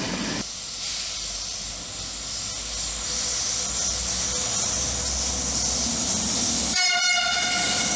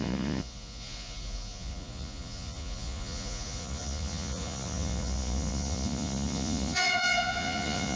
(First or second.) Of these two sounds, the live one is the first